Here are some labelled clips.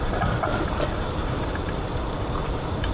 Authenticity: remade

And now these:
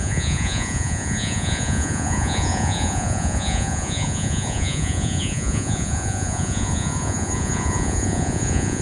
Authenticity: remade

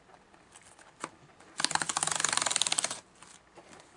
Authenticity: recorded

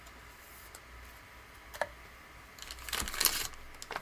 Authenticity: recorded